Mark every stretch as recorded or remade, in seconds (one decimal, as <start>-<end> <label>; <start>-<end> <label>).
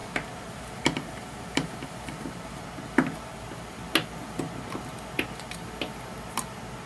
0.0-2.6 remade; 2.6-6.9 recorded